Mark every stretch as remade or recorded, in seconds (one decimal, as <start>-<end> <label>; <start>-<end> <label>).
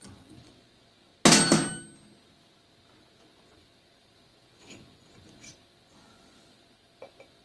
0.0-1.1 remade; 1.1-3.2 recorded; 3.2-7.4 remade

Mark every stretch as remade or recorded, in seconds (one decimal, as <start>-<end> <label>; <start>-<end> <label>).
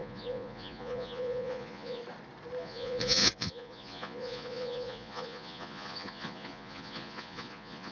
0.0-2.0 remade; 2.0-2.6 recorded; 2.6-7.9 remade